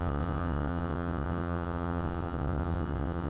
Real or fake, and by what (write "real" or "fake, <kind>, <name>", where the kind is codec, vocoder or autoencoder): fake, vocoder, WaveNeXt